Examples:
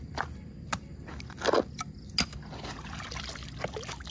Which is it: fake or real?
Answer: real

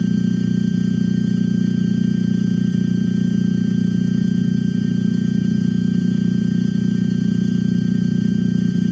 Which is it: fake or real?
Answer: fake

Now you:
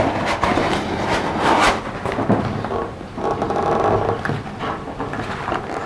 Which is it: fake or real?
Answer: real